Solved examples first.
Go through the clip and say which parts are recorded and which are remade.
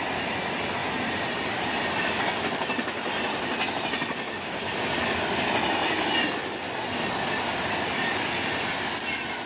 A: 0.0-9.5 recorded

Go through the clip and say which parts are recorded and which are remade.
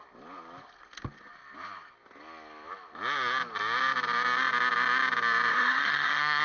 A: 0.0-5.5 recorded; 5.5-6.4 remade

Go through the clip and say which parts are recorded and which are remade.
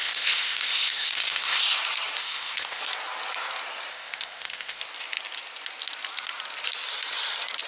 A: 0.0-1.6 remade; 1.6-2.2 recorded; 2.2-2.8 remade; 2.8-3.9 recorded; 3.9-4.8 remade; 4.8-7.7 recorded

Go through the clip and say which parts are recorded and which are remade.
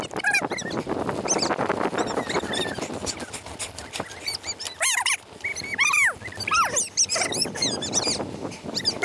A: 0.0-9.0 recorded